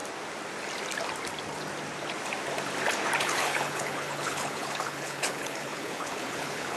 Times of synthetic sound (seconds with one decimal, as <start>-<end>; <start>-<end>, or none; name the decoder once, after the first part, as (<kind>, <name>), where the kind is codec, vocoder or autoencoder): 3.2-6.8 (codec, HILCodec)